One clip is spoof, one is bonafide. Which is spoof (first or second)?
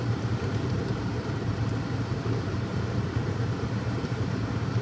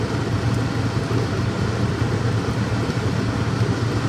first